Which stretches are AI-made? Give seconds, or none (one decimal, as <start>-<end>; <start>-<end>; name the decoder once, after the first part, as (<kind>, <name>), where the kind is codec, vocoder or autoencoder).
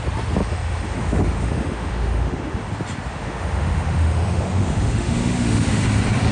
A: 0.4-2.7 (autoencoder, DAC-VAE); 3.1-5.8